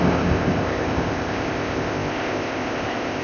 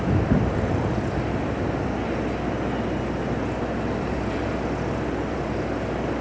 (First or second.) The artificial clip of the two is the first